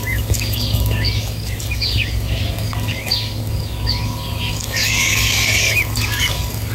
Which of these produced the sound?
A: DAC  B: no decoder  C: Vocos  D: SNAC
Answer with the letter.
A